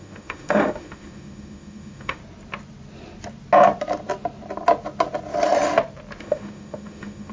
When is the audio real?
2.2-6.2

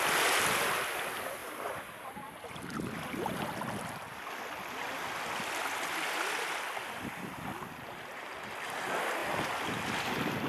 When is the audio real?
0.0-10.5

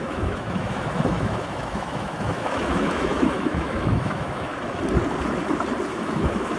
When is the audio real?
4.5-5.9

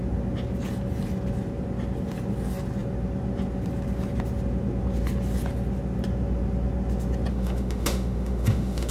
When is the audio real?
0.0-7.3